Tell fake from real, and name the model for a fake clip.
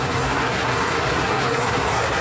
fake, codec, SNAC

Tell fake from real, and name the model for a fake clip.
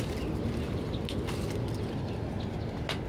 real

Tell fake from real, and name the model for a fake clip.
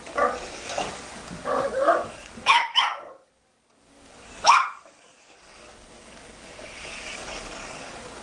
fake, codec, DAC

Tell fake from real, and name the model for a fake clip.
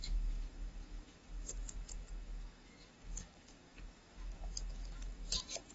fake, autoencoder, DAC-VAE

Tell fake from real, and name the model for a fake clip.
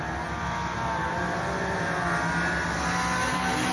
real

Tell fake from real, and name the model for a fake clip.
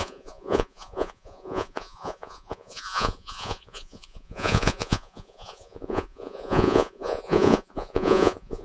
fake, vocoder, Vocos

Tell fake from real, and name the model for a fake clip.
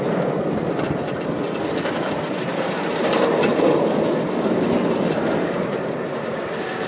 real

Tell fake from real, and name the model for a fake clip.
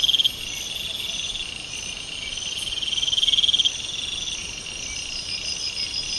real